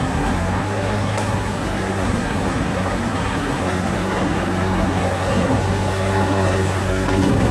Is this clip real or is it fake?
fake